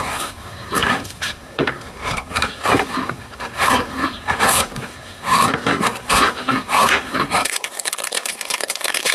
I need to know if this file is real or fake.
fake